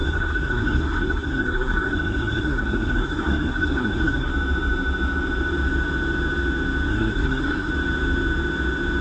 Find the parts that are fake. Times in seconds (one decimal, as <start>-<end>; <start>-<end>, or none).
0.0-4.3; 6.9-7.7